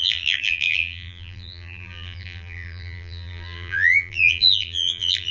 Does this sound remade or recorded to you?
remade